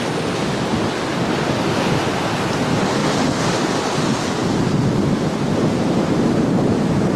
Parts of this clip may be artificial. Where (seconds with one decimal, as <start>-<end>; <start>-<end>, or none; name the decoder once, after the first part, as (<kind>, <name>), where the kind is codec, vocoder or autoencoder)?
none